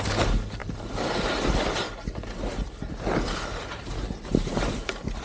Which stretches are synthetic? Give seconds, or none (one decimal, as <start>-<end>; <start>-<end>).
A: 4.3-5.2